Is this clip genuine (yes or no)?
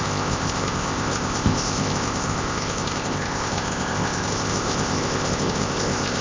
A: no